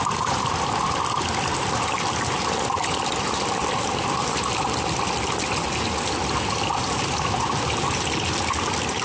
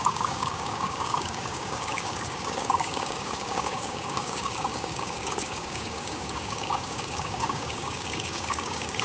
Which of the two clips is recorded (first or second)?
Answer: first